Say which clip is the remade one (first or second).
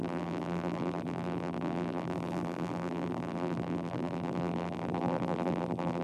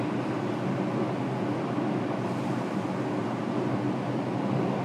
first